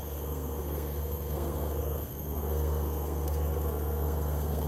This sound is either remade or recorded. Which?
remade